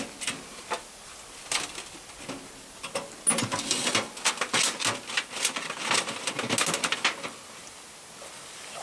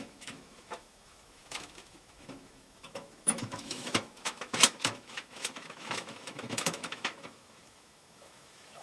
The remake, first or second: second